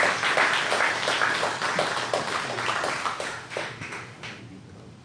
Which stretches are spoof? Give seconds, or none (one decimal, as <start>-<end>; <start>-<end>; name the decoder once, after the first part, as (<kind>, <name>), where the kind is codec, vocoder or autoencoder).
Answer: 3.0-4.4 (autoencoder, DAC-VAE)